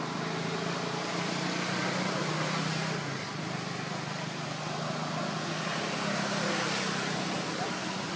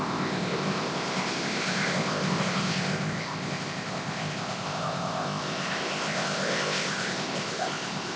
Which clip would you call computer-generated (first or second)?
second